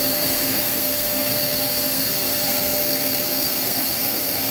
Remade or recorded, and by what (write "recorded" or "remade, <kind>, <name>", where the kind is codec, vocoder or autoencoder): remade, codec, SNAC